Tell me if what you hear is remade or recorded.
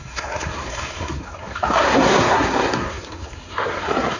remade